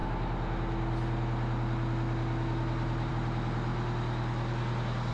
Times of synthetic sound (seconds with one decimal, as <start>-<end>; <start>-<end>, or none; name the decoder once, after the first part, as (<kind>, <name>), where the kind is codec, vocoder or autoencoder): none

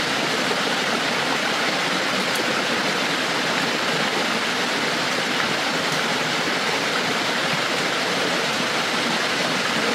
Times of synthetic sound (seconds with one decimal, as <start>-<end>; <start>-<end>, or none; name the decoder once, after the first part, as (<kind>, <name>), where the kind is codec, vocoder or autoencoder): 7.4-8.9 (vocoder, BigVGAN v2)

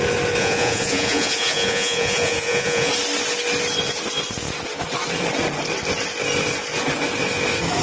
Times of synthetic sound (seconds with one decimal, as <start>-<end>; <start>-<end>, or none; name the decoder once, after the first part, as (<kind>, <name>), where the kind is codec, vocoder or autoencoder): 0.4-2.9 (vocoder, Vocos)

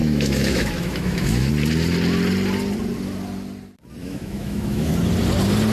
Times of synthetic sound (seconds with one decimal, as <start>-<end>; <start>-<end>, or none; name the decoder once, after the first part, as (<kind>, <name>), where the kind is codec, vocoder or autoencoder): 0.0-1.5 (autoencoder, DAC-VAE); 4.0-4.9

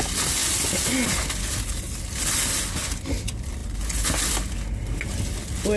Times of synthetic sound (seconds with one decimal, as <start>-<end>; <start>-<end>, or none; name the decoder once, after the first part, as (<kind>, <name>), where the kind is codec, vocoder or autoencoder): none

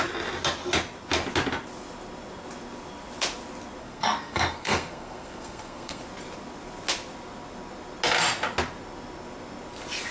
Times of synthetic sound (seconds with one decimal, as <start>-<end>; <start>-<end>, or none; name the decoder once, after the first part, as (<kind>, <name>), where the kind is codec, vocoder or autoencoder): 3.8-6.0 (codec, SNAC)

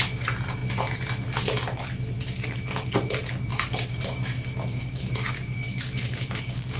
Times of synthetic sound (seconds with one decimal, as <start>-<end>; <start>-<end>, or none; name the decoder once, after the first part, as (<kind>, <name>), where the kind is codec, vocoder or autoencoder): 3.5-6.8 (codec, DAC)